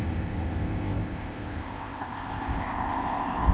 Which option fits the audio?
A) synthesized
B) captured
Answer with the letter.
A